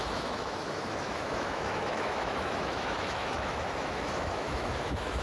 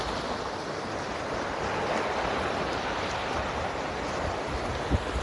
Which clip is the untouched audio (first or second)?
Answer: second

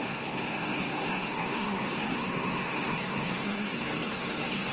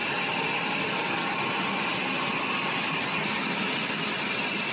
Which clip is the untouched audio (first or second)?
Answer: second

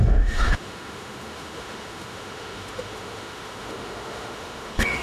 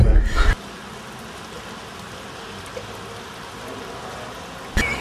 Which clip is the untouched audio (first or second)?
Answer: second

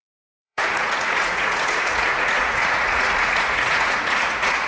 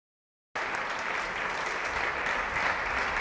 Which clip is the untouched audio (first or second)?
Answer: second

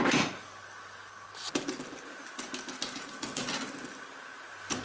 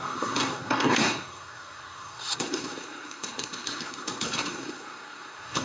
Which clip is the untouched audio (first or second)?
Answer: first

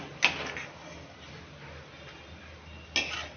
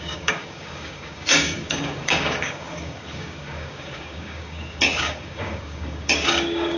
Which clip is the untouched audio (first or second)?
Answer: first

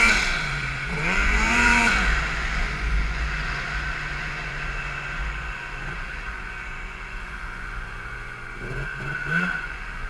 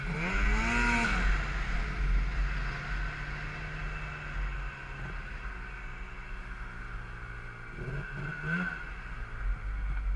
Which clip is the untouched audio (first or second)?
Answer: second